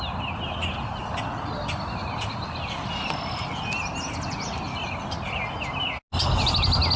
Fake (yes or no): no